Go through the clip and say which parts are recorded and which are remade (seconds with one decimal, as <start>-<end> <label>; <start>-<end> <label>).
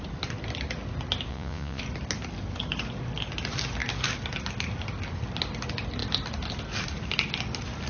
0.0-1.3 recorded; 1.3-1.8 remade; 1.8-7.9 recorded